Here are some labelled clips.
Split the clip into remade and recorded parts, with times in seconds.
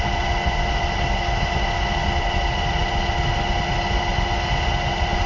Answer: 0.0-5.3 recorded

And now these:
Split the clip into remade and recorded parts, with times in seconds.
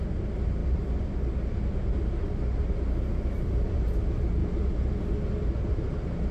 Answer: 0.0-6.3 recorded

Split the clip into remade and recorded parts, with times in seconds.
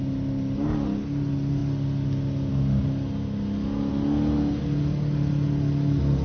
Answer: 0.0-6.2 recorded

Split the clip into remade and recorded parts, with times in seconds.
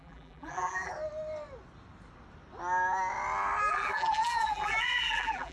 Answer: 0.0-0.9 remade; 0.9-3.7 recorded; 3.7-5.5 remade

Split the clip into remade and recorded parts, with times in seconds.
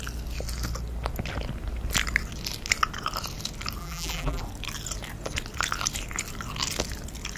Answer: 0.0-3.8 recorded; 3.8-4.4 remade; 4.4-7.4 recorded